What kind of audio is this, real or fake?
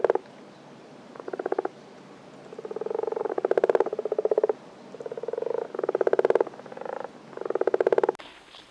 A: real